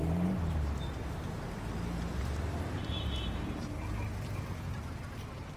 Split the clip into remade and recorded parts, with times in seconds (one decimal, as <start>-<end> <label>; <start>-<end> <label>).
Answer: 0.0-1.6 remade; 1.6-2.1 recorded; 2.1-5.1 remade; 5.1-5.6 recorded

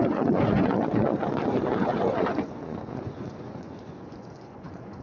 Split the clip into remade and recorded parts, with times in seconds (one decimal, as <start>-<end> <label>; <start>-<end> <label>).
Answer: 0.0-5.0 remade